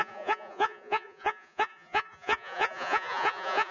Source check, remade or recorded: remade